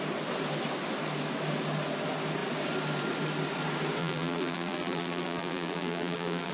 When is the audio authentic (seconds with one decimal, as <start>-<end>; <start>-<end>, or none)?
0.0-4.0

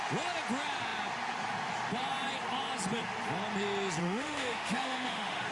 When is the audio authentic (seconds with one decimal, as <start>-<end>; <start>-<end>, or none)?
0.0-4.0

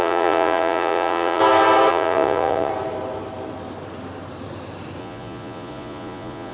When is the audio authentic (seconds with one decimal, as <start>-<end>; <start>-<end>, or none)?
1.4-1.9; 2.7-5.0

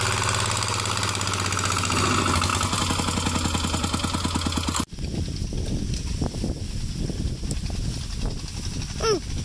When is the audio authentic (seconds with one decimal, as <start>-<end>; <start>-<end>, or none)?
0.0-9.4

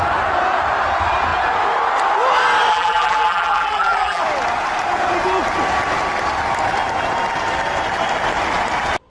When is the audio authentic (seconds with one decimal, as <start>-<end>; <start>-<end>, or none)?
0.0-2.7; 4.2-9.1

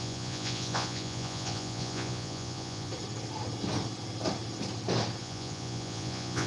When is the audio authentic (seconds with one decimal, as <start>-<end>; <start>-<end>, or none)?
2.9-5.2

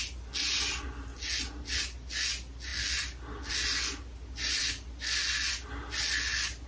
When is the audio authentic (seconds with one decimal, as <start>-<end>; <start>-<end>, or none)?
0.0-6.7

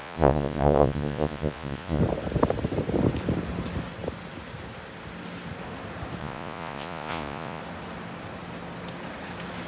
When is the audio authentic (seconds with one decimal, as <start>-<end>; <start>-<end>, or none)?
2.0-6.2; 7.6-9.7